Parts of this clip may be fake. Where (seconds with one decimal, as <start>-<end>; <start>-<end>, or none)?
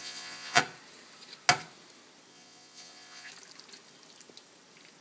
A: 0.0-0.6; 2.3-3.3